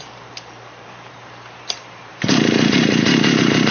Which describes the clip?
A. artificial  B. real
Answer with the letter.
A